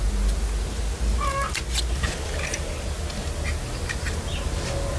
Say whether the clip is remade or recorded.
recorded